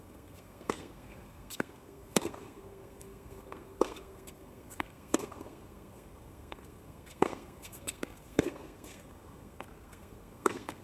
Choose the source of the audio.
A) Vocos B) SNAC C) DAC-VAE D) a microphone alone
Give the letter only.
B